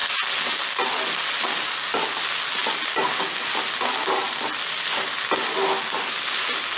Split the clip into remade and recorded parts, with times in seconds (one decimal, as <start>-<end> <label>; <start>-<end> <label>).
0.0-6.8 recorded